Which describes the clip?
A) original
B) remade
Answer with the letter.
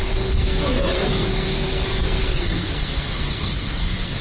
B